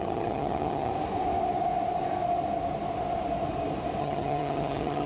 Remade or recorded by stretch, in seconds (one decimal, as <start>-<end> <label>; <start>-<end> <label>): 0.0-0.9 remade; 0.9-4.0 recorded; 4.0-5.1 remade